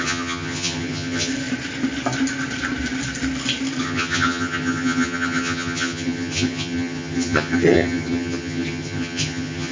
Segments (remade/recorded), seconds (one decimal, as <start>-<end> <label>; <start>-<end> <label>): 0.0-1.3 remade; 1.3-3.8 recorded; 3.8-9.7 remade